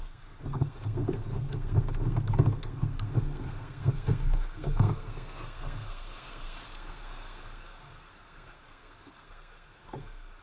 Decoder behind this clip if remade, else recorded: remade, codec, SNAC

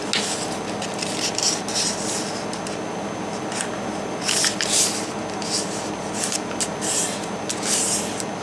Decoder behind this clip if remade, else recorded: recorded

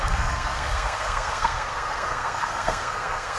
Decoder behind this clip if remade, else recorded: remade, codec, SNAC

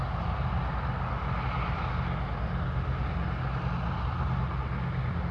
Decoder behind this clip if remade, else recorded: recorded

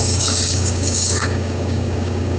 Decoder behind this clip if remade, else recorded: remade, codec, DAC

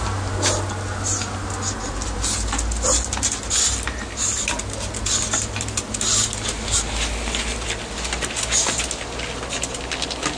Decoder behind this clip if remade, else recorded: recorded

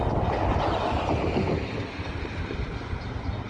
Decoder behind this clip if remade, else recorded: recorded